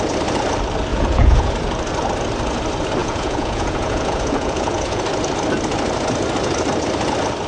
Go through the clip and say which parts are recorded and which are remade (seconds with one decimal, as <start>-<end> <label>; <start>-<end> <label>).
0.0-0.9 recorded; 0.9-1.5 remade; 1.5-3.0 recorded; 3.0-5.0 remade; 5.0-7.5 recorded

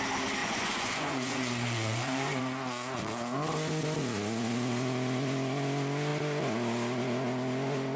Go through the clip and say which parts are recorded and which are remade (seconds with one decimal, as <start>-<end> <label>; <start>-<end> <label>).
0.0-0.4 recorded; 0.4-2.4 remade; 2.4-8.0 recorded

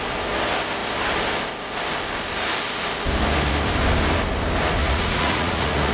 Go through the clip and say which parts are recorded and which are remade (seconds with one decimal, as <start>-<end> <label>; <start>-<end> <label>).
0.0-4.8 recorded; 4.8-5.9 remade

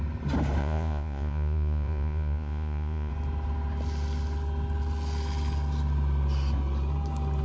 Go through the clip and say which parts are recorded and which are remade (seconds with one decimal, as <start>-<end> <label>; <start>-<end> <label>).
0.0-0.6 recorded; 0.6-3.1 remade; 3.1-7.4 recorded

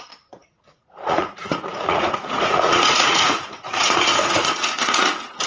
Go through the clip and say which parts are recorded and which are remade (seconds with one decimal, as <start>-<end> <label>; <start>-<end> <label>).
0.0-5.5 remade